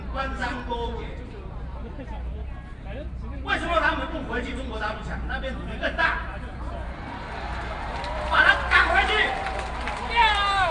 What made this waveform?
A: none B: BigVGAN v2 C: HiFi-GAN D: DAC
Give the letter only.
B